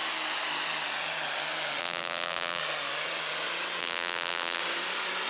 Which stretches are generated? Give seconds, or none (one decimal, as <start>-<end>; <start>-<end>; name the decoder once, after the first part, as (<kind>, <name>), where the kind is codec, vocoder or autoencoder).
1.8-2.6 (vocoder, BigVGAN v2); 3.8-4.6